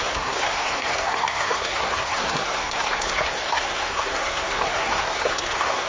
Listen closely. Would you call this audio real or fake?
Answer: fake